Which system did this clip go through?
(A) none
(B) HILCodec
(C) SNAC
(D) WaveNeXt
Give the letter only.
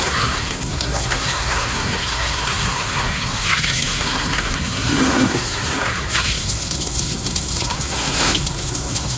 C